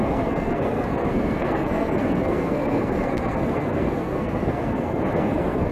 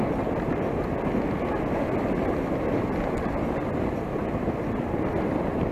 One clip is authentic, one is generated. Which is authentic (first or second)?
second